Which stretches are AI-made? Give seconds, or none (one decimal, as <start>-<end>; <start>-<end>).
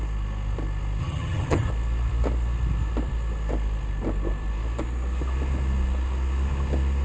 1.0-1.7